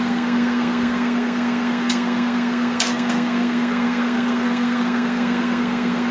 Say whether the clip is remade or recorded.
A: remade